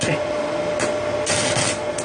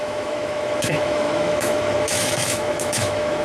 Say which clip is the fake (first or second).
second